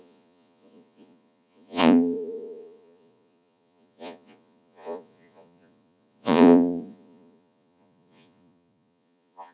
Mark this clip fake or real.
fake